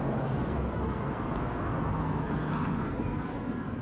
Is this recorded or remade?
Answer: remade